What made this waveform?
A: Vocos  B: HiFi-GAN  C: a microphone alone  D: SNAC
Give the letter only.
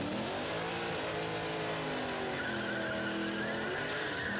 C